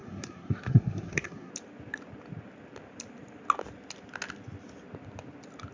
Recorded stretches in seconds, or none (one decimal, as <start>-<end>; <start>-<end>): 1.5-5.7